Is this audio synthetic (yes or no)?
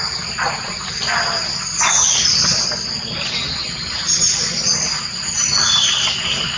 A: no